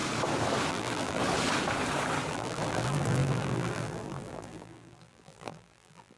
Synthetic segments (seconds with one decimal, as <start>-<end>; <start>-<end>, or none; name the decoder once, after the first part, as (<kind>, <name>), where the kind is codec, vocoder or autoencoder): 0.7-1.2 (vocoder, BigVGAN v2); 2.3-6.2